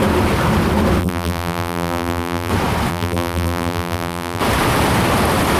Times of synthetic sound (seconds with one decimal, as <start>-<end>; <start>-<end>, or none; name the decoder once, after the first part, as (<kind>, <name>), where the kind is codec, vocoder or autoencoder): 1.0-2.5 (vocoder, BigVGAN v2); 2.9-4.4

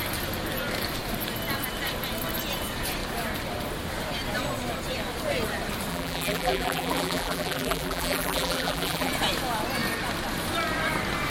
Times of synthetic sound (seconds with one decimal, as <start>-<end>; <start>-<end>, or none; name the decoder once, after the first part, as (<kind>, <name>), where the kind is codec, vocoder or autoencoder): 5.9-9.1 (vocoder, BigVGAN v2)

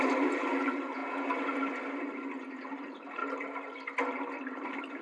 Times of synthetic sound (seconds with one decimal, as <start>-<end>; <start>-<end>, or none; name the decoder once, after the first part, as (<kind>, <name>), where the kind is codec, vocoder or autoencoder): 0.0-1.0 (vocoder, BigVGAN v2); 2.6-5.0

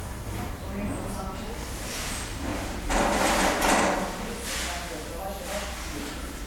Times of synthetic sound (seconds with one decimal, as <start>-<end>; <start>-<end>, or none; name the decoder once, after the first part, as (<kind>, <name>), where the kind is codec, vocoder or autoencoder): 0.0-2.5 (vocoder, BigVGAN v2); 5.7-6.5